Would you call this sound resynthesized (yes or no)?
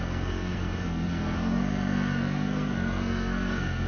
yes